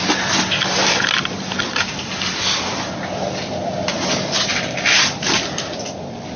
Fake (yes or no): no